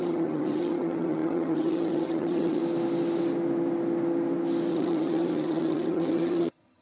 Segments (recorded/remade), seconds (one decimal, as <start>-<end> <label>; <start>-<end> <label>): 0.0-2.6 remade; 2.6-4.7 recorded; 4.7-6.8 remade

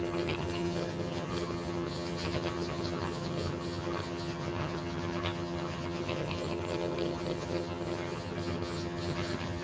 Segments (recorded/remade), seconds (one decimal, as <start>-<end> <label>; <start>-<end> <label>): 0.0-9.6 remade

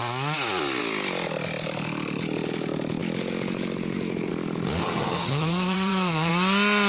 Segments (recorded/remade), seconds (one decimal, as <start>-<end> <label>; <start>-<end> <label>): 0.0-4.8 recorded; 4.8-6.3 remade; 6.3-6.9 recorded

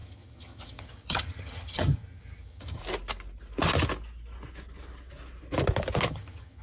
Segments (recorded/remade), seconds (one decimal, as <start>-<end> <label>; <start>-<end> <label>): 0.0-2.8 remade; 2.8-6.1 recorded; 6.1-6.6 remade

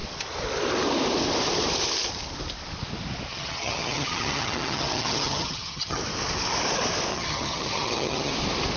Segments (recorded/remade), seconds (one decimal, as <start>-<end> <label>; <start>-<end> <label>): 0.0-3.3 recorded; 3.3-6.0 remade; 6.0-7.1 recorded; 7.1-8.3 remade; 8.3-8.8 recorded